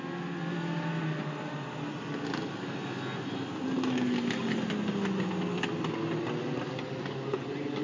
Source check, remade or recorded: recorded